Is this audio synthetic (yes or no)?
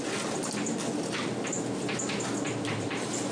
no